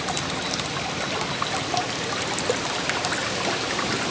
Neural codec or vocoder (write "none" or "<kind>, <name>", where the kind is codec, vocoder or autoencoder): none